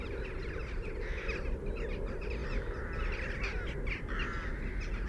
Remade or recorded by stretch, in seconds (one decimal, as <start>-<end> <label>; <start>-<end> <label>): 0.0-5.1 recorded